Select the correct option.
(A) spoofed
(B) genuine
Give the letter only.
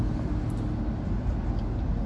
B